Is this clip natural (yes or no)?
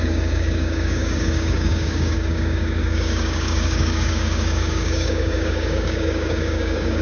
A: no